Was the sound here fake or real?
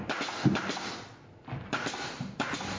real